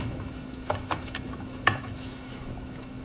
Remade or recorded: remade